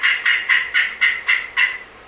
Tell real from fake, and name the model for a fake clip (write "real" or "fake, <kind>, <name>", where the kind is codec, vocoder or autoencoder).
real